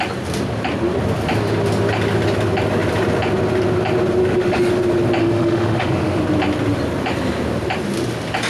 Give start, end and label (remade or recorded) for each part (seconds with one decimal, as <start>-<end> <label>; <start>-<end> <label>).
0.0-4.2 recorded; 4.2-4.7 remade; 4.7-5.2 recorded; 5.2-6.2 remade; 6.2-8.5 recorded